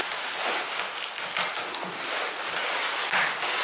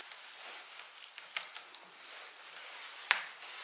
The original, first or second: first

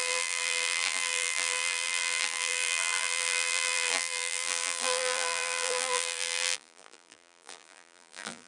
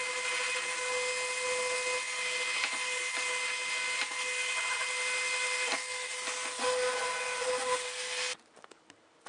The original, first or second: second